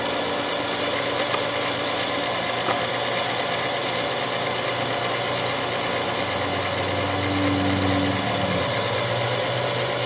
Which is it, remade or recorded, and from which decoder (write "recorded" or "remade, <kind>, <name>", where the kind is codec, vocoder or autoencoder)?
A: recorded